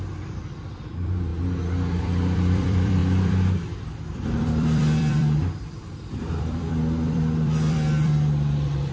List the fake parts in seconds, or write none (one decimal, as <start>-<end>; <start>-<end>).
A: 0.0-1.3; 2.0-8.9